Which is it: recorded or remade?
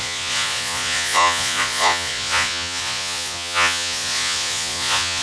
remade